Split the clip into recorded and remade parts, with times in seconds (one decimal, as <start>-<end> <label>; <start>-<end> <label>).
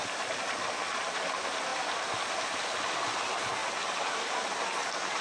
0.0-5.2 recorded